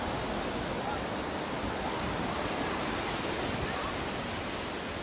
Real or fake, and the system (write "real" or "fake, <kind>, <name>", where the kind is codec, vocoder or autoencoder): real